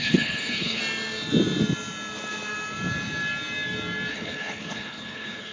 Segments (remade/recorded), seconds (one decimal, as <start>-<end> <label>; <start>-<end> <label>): 0.0-0.8 remade; 0.8-4.1 recorded; 4.1-5.5 remade

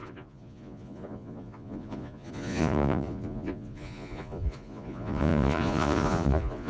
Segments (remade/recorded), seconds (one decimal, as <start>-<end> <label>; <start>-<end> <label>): 0.0-6.7 remade

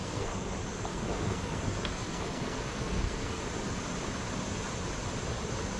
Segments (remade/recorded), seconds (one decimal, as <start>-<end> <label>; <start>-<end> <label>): 0.0-0.5 remade; 0.5-0.9 recorded; 0.9-3.4 remade; 3.4-5.8 recorded

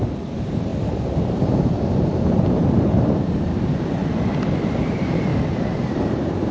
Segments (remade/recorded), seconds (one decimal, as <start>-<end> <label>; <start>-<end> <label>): 0.0-4.0 remade; 4.0-4.8 recorded; 4.8-5.3 remade; 5.3-6.0 recorded; 6.0-6.5 remade